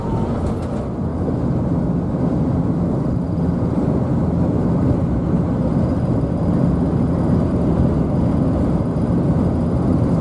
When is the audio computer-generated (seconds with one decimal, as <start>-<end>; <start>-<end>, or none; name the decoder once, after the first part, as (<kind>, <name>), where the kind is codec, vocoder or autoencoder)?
none